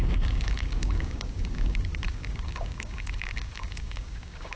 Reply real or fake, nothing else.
fake